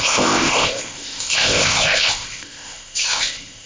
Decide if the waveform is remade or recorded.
remade